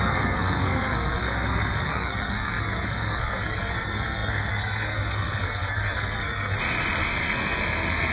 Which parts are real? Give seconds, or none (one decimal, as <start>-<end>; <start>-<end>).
6.5-7.0